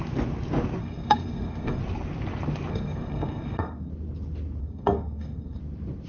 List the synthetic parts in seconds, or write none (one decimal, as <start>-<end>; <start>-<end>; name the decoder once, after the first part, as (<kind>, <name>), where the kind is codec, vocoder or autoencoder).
0.8-1.8 (codec, SNAC); 2.7-3.9; 4.6-5.6